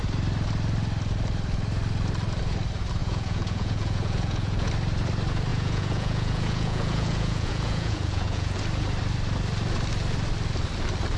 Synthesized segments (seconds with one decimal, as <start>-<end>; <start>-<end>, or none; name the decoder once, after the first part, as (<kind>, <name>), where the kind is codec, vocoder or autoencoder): 3.0-4.7 (vocoder, Vocos); 5.5-8.6